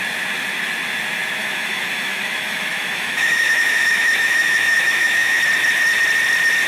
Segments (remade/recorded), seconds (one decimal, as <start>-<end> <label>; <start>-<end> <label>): 0.0-1.4 recorded; 1.4-5.4 remade; 5.4-6.7 recorded